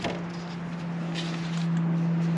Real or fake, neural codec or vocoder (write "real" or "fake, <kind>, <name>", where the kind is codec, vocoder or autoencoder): real